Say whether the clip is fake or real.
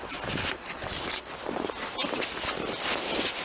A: real